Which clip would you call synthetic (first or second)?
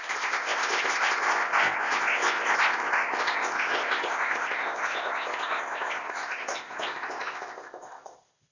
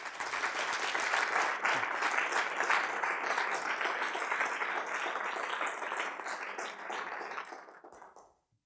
first